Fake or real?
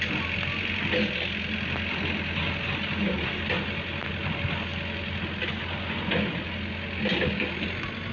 real